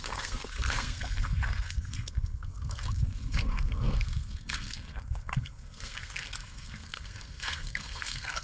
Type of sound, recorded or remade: remade